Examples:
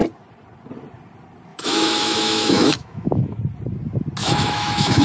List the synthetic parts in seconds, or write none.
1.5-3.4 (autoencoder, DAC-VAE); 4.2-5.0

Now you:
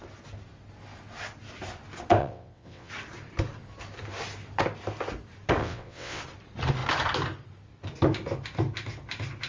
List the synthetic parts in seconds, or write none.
2.2-2.9 (vocoder, WaveNeXt); 5.6-6.2